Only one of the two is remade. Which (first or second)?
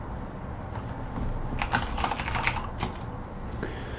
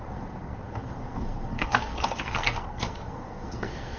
second